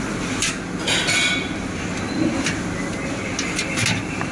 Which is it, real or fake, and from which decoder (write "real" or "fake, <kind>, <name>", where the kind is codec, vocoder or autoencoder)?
real